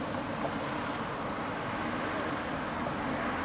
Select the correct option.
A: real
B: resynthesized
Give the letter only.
A